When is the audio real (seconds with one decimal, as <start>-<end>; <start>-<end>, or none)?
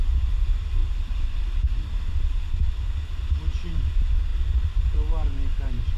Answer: 0.0-6.0